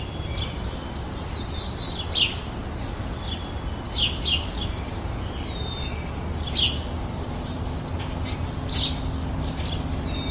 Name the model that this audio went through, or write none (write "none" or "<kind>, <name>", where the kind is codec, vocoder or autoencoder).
none